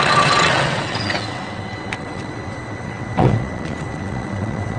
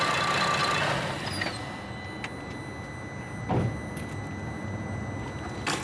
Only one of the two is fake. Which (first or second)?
first